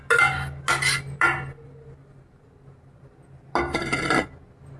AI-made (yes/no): no